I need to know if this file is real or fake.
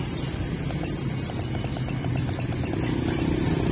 fake